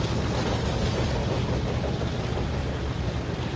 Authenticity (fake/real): real